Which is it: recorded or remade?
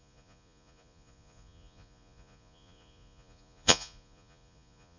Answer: remade